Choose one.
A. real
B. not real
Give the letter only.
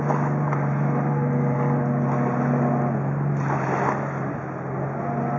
A